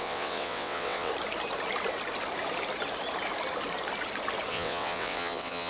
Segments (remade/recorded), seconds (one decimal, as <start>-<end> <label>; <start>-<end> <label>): 0.0-1.1 remade; 1.1-4.5 recorded; 4.5-5.7 remade